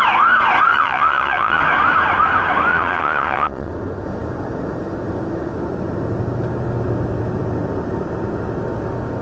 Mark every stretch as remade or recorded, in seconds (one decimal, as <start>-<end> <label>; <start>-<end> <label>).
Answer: 0.0-0.7 recorded; 0.7-1.6 remade; 1.6-2.7 recorded; 2.7-3.7 remade; 3.7-9.2 recorded